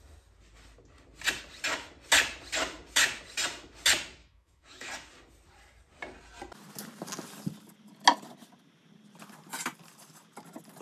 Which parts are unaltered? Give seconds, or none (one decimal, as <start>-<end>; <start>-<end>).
0.0-4.2; 4.9-10.8

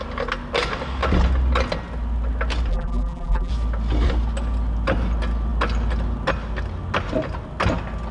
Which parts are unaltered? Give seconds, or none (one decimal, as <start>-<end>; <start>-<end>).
0.0-2.7; 3.5-8.1

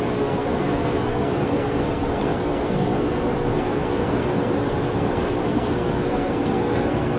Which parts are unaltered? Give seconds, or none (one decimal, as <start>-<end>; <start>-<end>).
none

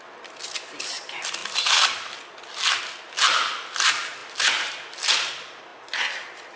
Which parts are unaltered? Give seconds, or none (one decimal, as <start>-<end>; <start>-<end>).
0.0-6.6

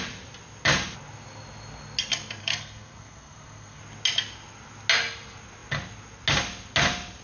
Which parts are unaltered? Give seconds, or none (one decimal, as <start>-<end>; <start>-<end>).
0.0-2.4; 3.8-7.2

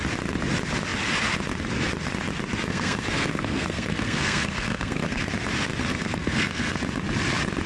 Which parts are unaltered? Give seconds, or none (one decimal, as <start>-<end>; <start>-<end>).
0.0-2.7; 5.3-5.8; 6.8-7.7